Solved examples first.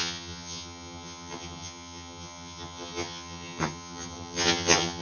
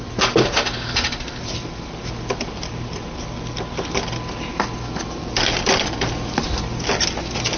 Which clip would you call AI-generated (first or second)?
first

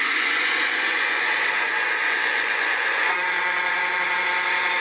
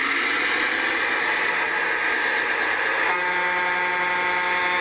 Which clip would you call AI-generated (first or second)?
first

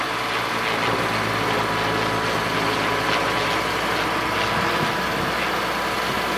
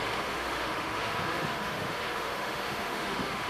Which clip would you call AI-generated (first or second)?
second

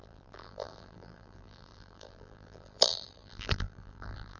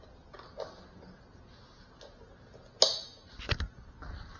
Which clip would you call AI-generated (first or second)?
first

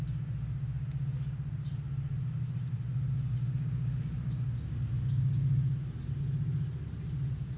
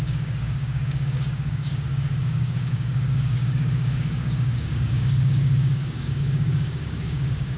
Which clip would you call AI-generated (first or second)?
second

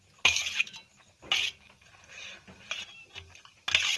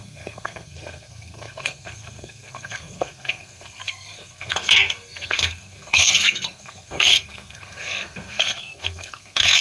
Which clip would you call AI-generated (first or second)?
second